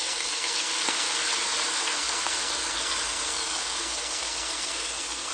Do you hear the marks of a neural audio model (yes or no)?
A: yes